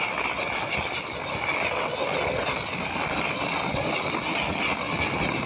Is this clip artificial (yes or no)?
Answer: no